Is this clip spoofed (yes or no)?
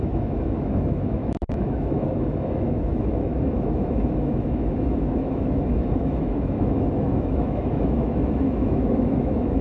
yes